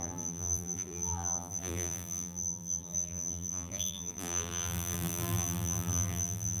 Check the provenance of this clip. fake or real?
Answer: fake